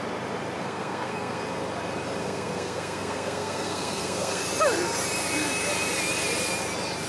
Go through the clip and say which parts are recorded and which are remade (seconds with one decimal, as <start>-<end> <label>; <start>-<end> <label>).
0.0-0.6 recorded; 0.6-1.4 remade; 1.4-2.2 recorded; 2.2-4.5 remade; 4.5-7.1 recorded